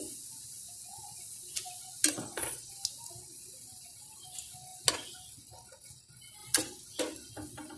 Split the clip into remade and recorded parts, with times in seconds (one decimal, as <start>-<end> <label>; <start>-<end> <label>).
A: 0.0-2.1 recorded; 2.1-2.7 remade; 2.7-7.8 recorded